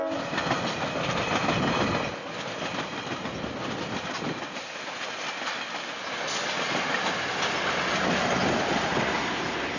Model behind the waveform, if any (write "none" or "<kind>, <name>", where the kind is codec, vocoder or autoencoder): none